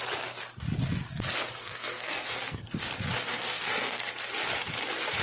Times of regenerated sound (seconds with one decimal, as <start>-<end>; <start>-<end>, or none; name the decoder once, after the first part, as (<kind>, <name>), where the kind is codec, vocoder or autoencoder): 1.6-2.8 (codec, SNAC); 3.3-4.1